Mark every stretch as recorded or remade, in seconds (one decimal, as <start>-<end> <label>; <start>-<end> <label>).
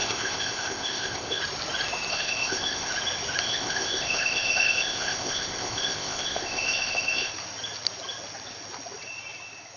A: 0.0-1.4 remade; 1.4-2.1 recorded; 2.1-2.9 remade; 2.9-3.4 recorded; 3.4-7.3 remade; 7.3-9.8 recorded